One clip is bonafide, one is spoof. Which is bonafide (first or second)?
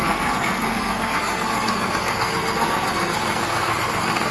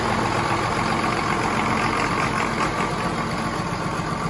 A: second